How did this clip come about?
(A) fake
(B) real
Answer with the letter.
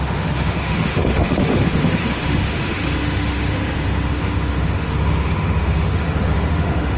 A